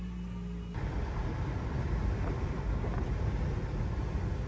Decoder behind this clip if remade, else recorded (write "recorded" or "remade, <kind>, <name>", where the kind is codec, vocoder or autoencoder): recorded